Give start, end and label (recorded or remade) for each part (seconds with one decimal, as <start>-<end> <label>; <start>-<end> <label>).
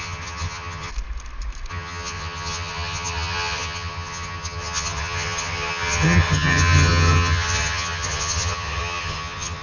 0.0-0.9 remade; 0.9-1.7 recorded; 1.7-9.6 remade